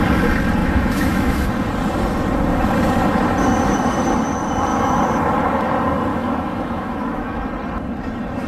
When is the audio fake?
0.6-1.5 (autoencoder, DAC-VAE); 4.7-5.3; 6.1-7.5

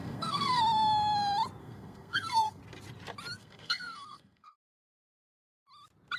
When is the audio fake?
0.0-0.6 (codec, SNAC); 1.6-2.6; 3.4-5.5

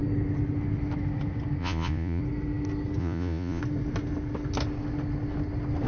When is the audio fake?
1.6-2.2 (vocoder, Vocos); 3.0-3.6

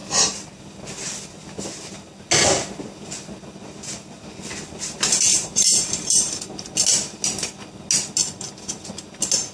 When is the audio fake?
5.3-6.4 (vocoder, BigVGAN v2)

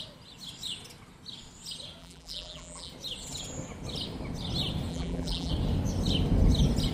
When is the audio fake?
2.0-2.9 (vocoder, BigVGAN v2); 4.9-5.5

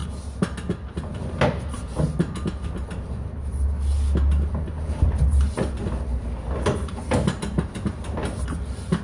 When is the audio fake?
none

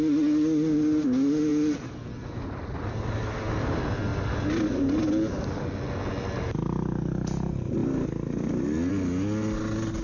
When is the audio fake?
none